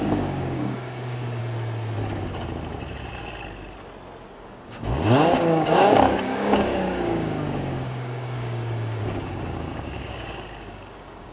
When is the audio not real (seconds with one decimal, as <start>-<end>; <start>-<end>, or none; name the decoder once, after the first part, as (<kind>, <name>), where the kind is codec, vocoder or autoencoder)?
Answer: 0.0-1.4 (codec, DAC); 4.3-11.3